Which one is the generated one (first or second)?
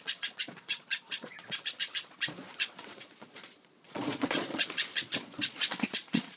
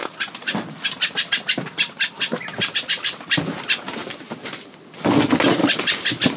first